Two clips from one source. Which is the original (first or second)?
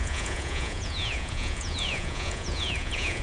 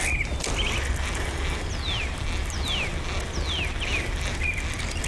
second